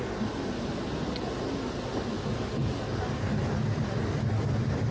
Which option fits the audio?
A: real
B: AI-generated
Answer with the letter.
A